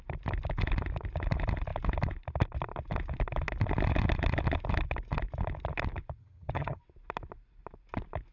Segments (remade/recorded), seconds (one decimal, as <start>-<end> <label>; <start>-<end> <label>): 0.0-6.2 recorded; 6.2-6.8 remade; 6.8-8.3 recorded